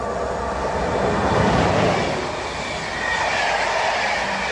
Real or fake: real